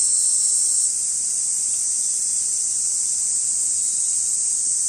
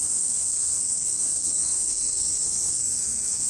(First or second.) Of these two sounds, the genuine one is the first